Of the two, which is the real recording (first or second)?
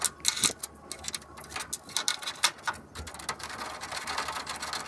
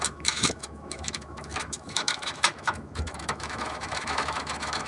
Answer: first